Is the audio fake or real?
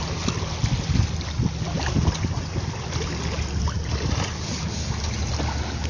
real